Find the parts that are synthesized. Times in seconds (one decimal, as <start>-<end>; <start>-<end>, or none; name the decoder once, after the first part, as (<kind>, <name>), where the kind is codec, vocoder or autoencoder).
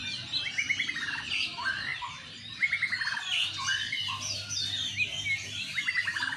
1.9-2.5 (vocoder, BigVGAN v2); 5.4-6.4